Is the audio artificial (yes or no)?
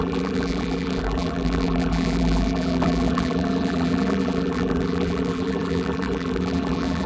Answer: yes